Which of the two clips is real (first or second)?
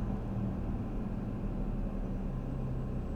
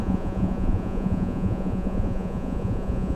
first